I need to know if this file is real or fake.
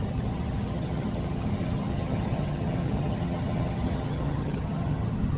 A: fake